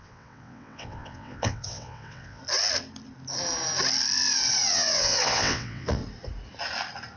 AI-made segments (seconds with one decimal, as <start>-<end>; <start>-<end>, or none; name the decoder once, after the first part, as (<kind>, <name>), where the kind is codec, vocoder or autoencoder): 0.0-2.4 (vocoder, WaveNeXt); 4.7-6.0